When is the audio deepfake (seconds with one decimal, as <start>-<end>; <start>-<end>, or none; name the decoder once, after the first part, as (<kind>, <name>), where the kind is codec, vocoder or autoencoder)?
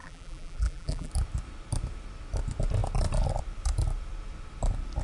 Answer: 0.0-1.1 (vocoder, BigVGAN v2)